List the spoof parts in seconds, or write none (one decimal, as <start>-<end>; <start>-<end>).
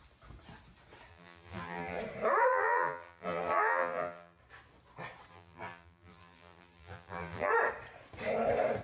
1.1-2.0; 2.5-4.4; 5.3-7.5